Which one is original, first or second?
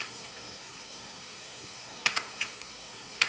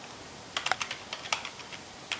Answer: second